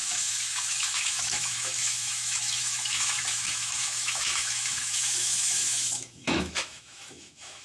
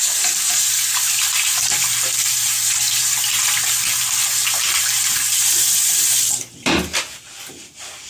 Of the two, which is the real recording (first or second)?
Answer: second